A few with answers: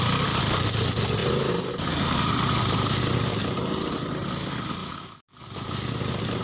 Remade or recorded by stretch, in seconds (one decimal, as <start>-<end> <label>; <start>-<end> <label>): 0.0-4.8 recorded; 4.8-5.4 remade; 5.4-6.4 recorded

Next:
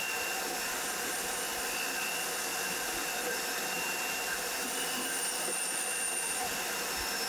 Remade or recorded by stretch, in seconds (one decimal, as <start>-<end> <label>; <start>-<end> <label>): 0.0-2.5 recorded; 2.5-7.3 remade

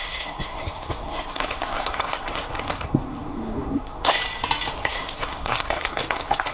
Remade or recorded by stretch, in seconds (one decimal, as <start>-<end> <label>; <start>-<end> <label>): 0.0-4.2 remade; 4.2-4.7 recorded; 4.7-6.5 remade

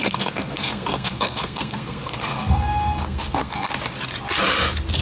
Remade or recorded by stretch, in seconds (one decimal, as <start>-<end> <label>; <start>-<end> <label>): 0.0-3.7 remade; 3.7-5.0 recorded

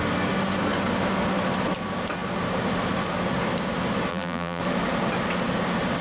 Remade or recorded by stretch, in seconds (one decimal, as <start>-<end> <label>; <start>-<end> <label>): 0.0-4.1 recorded; 4.1-4.6 remade; 4.6-6.0 recorded

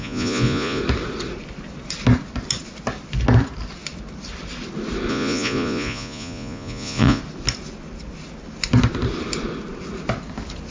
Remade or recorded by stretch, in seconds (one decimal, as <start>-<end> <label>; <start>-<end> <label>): 0.0-0.8 remade; 0.8-5.1 recorded; 5.1-7.2 remade; 7.2-10.7 recorded

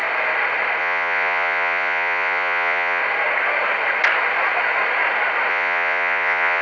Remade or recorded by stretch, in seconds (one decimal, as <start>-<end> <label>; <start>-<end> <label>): 0.0-0.8 recorded; 0.8-3.0 remade; 3.0-5.5 recorded; 5.5-6.6 remade

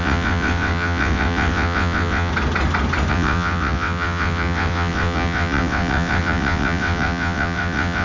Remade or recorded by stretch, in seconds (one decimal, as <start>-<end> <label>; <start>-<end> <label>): 0.0-2.3 remade; 2.3-3.1 recorded; 3.1-8.0 remade